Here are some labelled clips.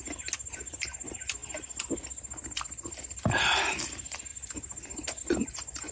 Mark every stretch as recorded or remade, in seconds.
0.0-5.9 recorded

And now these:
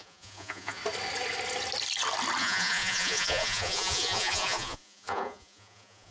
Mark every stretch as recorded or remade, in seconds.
0.0-0.8 remade; 0.8-2.4 recorded; 2.4-6.1 remade

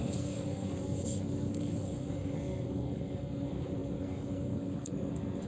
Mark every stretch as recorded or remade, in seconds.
0.0-5.5 remade

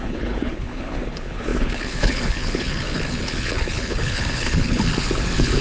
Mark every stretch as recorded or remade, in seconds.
0.0-5.6 remade

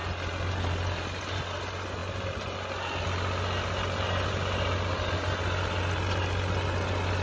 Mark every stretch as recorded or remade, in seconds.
0.0-7.2 recorded

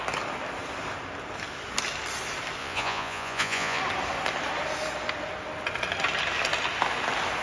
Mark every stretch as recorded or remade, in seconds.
0.0-2.6 recorded; 2.6-3.8 remade; 3.8-7.4 recorded